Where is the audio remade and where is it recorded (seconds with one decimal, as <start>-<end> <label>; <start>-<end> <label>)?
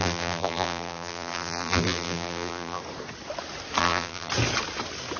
0.0-2.8 remade; 2.8-3.8 recorded; 3.8-4.3 remade; 4.3-5.2 recorded